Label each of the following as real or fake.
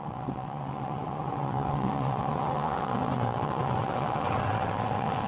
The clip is fake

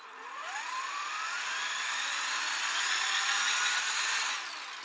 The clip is real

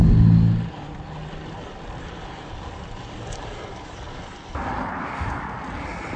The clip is real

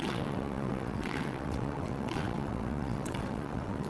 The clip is fake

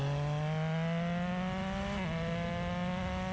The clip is real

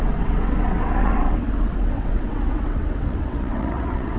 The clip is fake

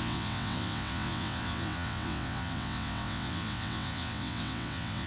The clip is fake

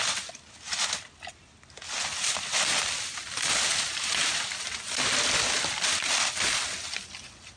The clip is real